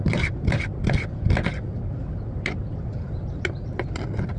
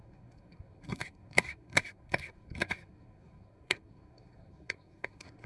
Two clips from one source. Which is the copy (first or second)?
second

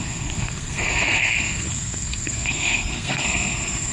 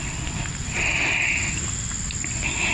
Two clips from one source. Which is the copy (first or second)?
first